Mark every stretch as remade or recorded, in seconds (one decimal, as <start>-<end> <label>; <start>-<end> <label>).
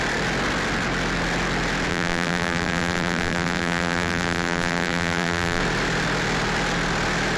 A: 0.0-1.9 recorded; 1.9-5.6 remade; 5.6-7.4 recorded